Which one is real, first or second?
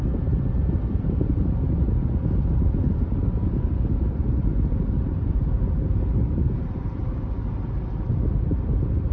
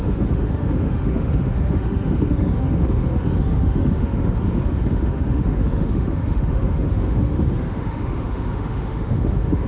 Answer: first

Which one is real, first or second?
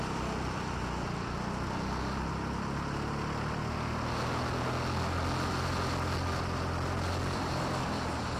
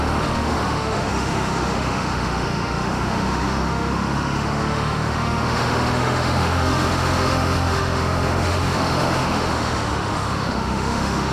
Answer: first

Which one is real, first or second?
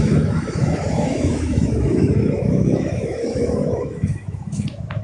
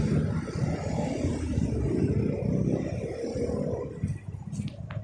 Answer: second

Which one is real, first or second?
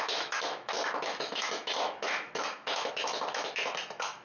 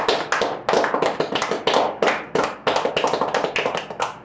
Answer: second